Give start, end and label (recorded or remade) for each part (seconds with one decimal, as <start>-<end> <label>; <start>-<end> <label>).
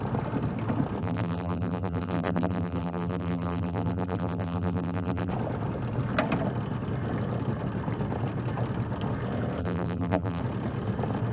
0.0-1.0 recorded; 1.0-5.3 remade; 5.3-9.6 recorded; 9.6-10.4 remade; 10.4-11.3 recorded